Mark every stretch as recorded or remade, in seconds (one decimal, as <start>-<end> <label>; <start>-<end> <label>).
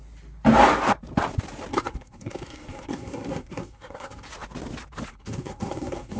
0.0-1.7 recorded; 1.7-4.3 remade; 4.3-5.1 recorded; 5.1-6.2 remade